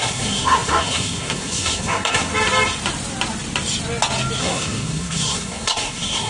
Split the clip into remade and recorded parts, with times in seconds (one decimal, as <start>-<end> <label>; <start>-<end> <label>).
0.0-2.3 remade; 2.3-4.4 recorded; 4.4-6.3 remade